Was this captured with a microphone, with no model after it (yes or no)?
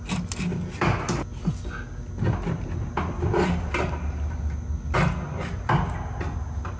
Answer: yes